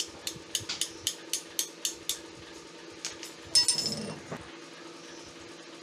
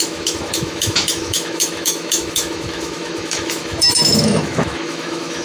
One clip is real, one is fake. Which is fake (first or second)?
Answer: second